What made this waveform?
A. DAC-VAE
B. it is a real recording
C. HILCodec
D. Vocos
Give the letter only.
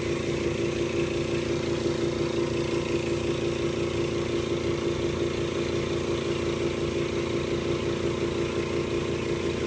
B